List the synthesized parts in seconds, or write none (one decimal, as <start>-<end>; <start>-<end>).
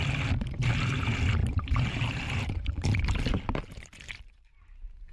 1.4-4.5